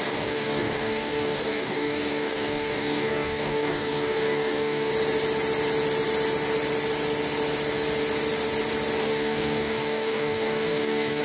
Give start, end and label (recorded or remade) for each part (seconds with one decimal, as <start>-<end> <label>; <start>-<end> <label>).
0.0-4.9 remade; 4.9-9.0 recorded; 9.0-11.2 remade